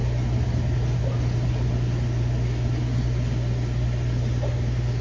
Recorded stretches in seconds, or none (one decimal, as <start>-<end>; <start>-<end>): 0.0-5.0